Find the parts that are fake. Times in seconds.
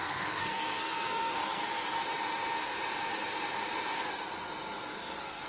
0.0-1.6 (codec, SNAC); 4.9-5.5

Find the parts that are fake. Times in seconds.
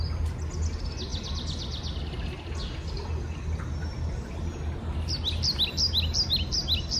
none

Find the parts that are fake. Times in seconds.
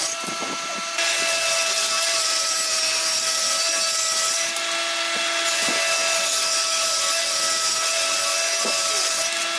none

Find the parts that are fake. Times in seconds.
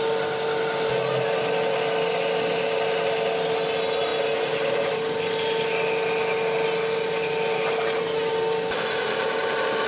none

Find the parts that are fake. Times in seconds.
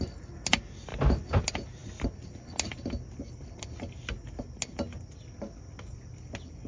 none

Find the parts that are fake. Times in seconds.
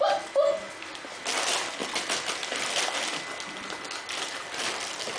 none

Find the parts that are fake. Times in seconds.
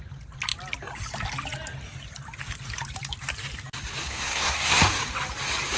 4.0-4.8 (codec, SNAC)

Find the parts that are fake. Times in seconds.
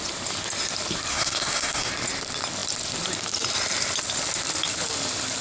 1.1-1.9 (codec, SNAC)